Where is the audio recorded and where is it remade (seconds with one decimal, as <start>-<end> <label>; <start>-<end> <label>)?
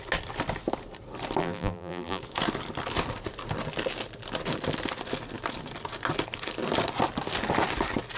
0.0-1.4 recorded; 1.4-2.2 remade; 2.2-8.2 recorded